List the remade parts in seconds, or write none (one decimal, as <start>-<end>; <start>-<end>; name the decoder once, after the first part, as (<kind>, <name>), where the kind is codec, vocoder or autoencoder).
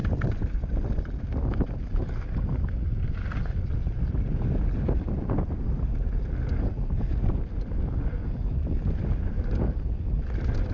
none